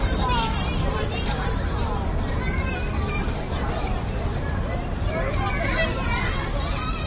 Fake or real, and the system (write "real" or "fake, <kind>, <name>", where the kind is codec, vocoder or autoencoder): fake, vocoder, BigVGAN v2